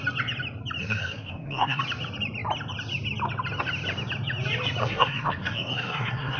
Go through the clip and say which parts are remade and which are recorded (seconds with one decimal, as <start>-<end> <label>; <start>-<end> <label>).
0.0-0.8 recorded; 0.8-1.8 remade; 1.8-4.8 recorded; 4.8-6.4 remade